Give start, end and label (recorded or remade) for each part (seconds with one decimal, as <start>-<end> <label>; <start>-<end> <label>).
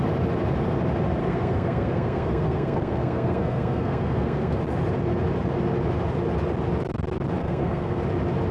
0.0-1.2 recorded; 1.2-4.6 remade; 4.6-7.4 recorded; 7.4-8.0 remade; 8.0-8.5 recorded